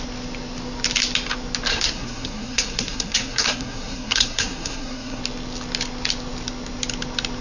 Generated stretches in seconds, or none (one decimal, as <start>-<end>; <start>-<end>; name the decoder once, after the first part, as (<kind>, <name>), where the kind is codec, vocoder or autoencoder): 1.7-5.2 (codec, SNAC)